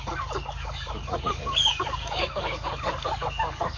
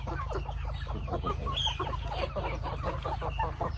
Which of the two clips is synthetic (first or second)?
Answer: first